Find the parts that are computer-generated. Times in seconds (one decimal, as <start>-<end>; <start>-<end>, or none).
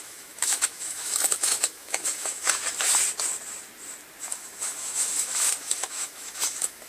0.0-2.6; 4.2-6.9